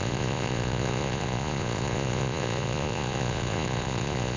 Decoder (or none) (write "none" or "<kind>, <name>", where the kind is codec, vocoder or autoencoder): vocoder, Vocos